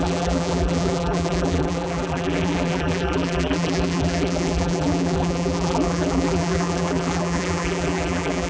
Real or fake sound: fake